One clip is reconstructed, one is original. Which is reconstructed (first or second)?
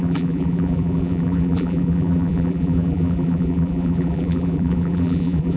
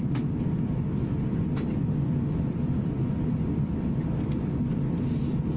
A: first